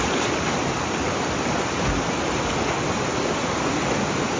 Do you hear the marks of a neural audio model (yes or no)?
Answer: no